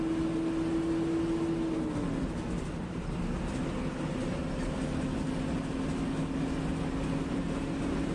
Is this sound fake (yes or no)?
no